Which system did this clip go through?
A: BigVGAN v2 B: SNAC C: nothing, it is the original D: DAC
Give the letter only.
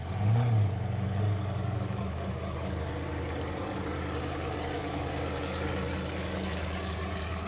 D